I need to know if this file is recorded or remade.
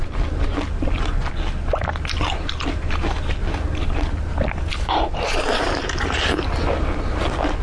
recorded